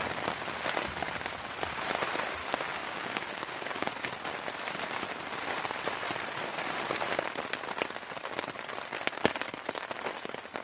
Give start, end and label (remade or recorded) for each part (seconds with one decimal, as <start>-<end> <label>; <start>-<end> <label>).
0.0-2.4 recorded; 2.4-3.9 remade; 3.9-10.6 recorded